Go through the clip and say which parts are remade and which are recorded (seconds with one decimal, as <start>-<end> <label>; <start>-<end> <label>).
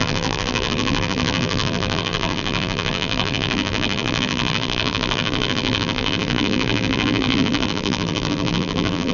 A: 0.0-9.1 remade